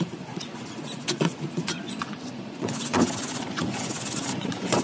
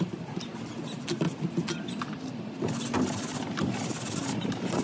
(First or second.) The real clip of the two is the second